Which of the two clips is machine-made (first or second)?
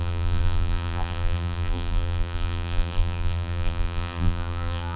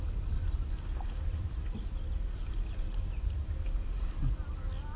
first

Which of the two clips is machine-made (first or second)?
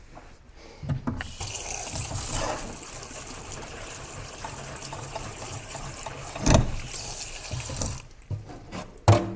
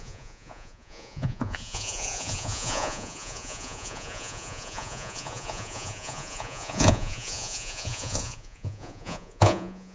second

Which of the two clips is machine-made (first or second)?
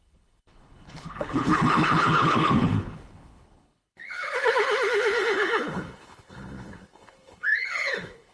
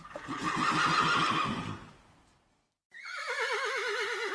first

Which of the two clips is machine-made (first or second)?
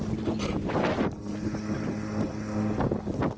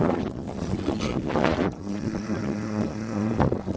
second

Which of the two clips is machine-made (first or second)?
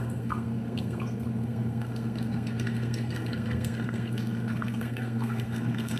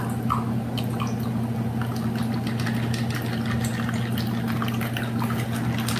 first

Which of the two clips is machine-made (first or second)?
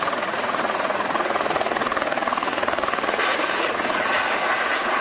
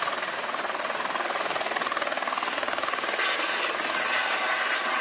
first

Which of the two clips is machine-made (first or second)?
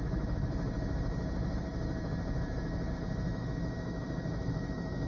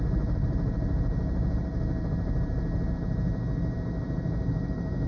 first